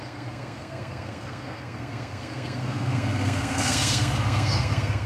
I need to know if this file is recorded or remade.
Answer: remade